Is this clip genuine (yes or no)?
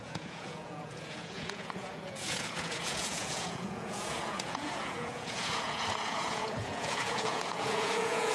no